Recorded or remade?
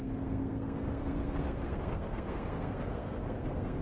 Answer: remade